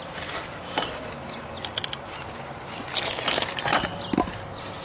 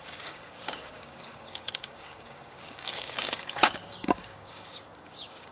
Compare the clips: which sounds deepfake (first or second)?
second